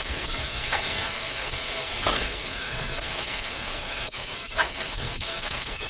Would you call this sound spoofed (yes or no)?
yes